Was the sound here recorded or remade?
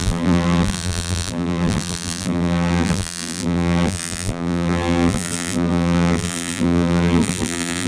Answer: remade